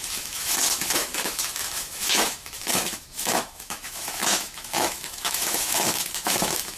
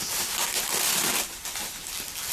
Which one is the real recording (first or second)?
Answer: second